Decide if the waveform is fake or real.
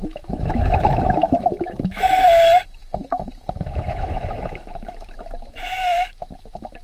fake